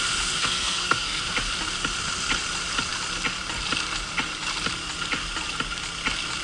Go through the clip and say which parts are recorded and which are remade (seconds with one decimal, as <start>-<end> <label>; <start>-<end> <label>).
0.0-0.4 recorded; 0.4-1.2 remade; 1.2-6.4 recorded